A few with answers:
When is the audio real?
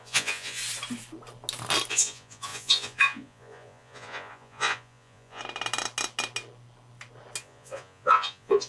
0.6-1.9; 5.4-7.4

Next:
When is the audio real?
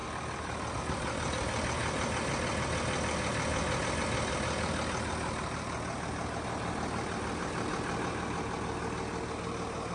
0.0-9.9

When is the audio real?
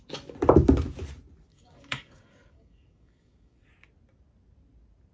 0.0-1.5; 3.7-5.1